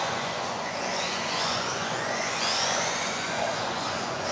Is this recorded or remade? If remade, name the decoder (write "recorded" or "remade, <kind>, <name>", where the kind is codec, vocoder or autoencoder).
remade, vocoder, Vocos